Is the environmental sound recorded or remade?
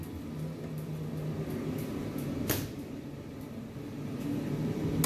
recorded